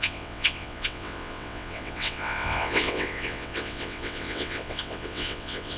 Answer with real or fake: fake